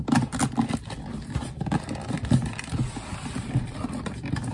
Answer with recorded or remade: recorded